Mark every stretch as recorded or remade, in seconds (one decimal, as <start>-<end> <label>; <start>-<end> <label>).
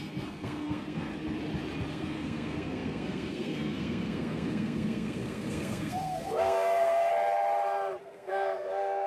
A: 0.0-1.1 remade; 1.1-1.9 recorded; 1.9-7.1 remade; 7.1-8.0 recorded; 8.0-9.1 remade